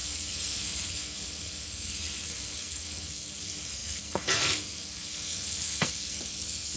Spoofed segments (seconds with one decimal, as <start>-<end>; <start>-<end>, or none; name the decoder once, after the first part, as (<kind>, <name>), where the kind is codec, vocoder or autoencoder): 0.0-6.8 (codec, SNAC)